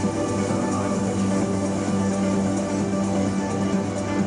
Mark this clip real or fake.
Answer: real